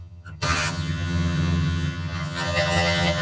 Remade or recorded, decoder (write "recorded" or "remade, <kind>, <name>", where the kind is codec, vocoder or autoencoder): remade, vocoder, HiFi-GAN